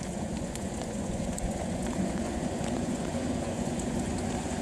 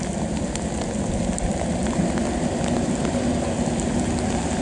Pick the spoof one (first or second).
first